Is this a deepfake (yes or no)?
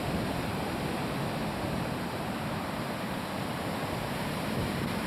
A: yes